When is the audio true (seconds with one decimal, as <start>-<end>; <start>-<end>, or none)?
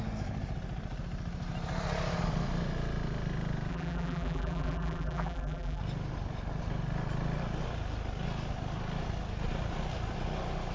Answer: 0.0-3.7; 5.8-10.7